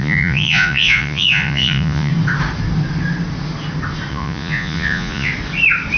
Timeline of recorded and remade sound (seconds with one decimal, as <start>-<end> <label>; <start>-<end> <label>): 0.0-2.1 remade; 2.1-4.1 recorded; 4.1-5.3 remade; 5.3-6.0 recorded

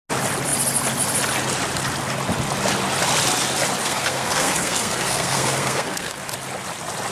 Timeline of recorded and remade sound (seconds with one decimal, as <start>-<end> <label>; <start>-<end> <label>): 0.0-3.8 recorded; 3.8-6.2 remade; 6.2-7.1 recorded

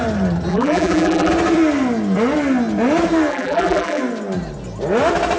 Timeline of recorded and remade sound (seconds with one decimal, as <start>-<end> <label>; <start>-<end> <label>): 0.0-0.5 recorded; 0.5-1.3 remade; 1.3-3.3 recorded; 3.3-4.0 remade; 4.0-5.4 recorded

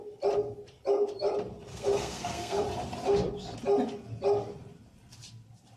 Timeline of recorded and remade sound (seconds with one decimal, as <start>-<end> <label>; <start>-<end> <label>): 0.0-1.7 recorded; 1.7-2.6 remade; 2.6-5.8 recorded